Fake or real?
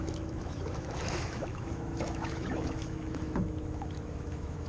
fake